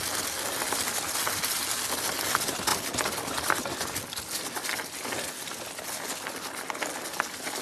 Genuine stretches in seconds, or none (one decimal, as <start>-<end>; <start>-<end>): 0.0-7.6